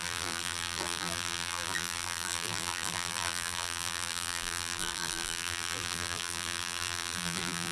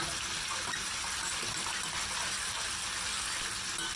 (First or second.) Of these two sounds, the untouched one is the second